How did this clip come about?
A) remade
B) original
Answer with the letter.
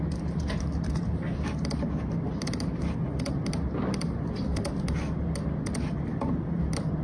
B